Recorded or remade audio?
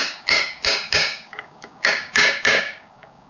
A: remade